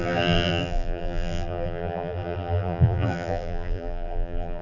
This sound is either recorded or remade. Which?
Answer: remade